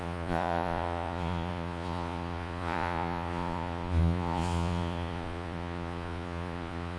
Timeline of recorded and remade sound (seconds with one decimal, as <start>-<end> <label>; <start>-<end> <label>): 0.0-7.0 remade